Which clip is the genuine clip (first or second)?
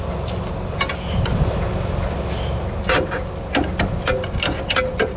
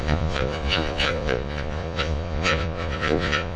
first